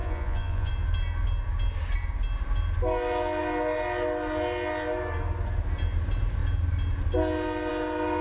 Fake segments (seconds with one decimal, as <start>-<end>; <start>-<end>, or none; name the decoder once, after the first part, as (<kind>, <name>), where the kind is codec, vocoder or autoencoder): 0.0-0.7 (vocoder, Vocos)